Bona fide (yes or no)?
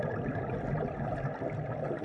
yes